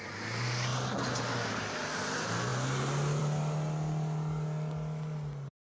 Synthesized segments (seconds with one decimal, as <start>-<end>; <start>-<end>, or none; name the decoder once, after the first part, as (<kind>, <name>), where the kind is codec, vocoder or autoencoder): none